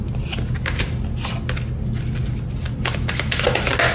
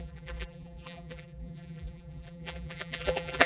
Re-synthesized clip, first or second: second